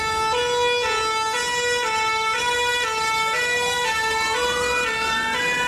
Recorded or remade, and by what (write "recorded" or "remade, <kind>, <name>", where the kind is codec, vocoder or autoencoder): recorded